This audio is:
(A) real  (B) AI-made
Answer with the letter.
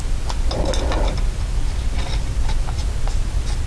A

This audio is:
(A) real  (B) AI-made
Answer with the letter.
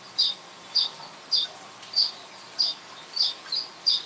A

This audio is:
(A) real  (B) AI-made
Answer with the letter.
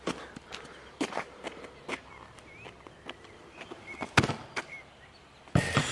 A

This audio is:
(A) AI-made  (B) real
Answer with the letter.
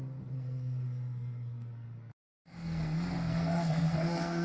A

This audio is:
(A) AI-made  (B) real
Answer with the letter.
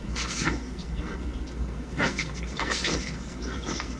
A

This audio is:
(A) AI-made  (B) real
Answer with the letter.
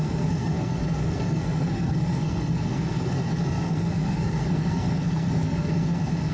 A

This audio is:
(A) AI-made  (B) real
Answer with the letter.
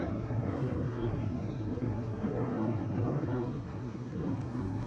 A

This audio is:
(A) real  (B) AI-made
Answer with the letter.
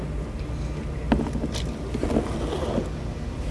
A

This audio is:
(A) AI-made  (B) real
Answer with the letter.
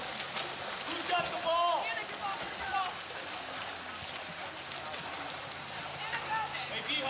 B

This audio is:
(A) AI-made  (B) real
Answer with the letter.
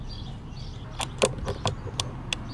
B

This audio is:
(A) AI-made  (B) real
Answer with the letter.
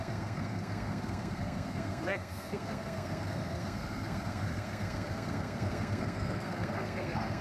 A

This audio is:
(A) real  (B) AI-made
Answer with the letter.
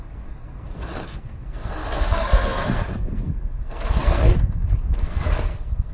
B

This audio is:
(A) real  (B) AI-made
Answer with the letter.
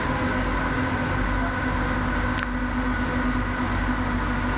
A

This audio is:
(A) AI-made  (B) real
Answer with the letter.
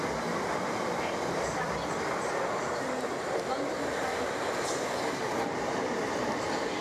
B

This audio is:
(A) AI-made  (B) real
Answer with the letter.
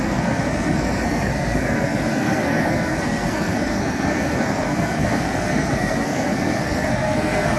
A